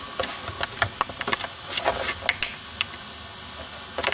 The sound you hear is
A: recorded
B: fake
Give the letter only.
A